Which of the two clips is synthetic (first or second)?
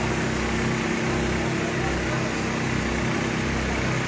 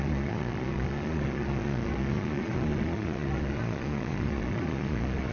second